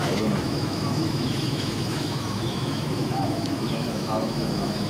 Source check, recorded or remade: remade